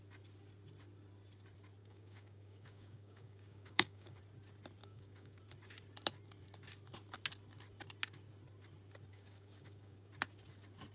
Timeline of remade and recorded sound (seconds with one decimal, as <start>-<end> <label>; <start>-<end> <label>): 0.0-1.8 recorded; 1.8-4.2 remade; 4.2-4.8 recorded; 4.8-5.4 remade; 5.4-9.1 recorded; 9.1-10.1 remade; 10.1-10.9 recorded